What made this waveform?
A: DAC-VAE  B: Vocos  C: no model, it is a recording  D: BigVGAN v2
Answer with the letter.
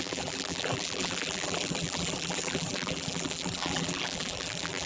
D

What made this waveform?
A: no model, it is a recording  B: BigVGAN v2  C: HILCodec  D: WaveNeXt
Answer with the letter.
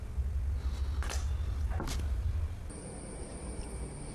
A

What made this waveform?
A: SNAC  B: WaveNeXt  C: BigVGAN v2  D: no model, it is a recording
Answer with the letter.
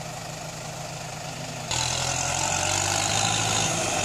C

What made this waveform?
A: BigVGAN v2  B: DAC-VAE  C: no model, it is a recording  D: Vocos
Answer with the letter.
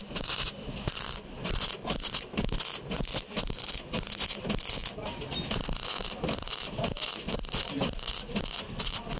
C